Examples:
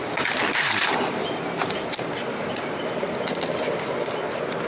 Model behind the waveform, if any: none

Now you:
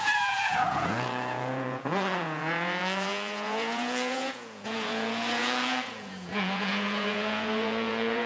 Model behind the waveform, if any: vocoder, Vocos